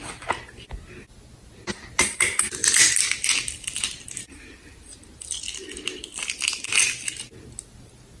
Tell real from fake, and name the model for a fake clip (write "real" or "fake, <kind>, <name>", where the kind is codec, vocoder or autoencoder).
real